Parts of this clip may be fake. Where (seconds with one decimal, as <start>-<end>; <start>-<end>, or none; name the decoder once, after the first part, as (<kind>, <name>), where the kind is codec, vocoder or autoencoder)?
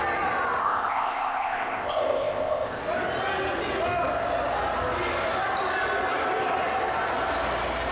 0.6-2.8 (codec, ZipCodec)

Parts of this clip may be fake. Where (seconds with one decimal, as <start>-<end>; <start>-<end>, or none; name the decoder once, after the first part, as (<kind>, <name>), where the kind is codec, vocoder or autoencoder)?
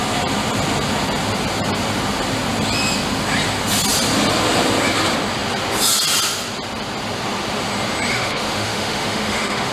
8.1-9.7 (autoencoder, DAC-VAE)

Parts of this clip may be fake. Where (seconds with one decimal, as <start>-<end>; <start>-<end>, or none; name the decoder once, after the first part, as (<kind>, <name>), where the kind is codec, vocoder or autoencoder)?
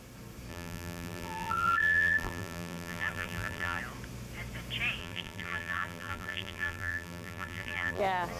0.5-3.8 (vocoder, BigVGAN v2); 5.0-8.0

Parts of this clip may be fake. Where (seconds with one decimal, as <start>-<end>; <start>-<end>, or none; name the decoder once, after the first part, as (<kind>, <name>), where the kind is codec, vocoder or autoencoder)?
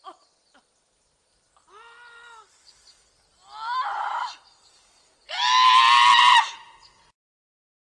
none